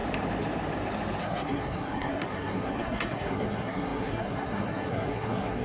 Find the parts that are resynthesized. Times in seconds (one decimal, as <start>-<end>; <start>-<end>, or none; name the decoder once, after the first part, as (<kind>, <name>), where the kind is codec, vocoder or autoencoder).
1.2-5.6 (codec, SNAC)